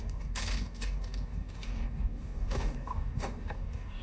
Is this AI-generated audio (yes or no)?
yes